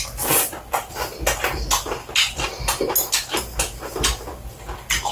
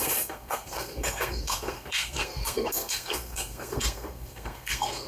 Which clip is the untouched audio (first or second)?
first